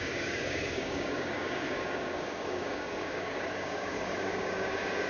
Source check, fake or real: fake